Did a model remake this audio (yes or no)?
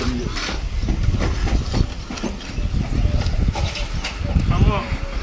no